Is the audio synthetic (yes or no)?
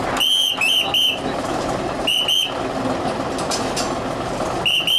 no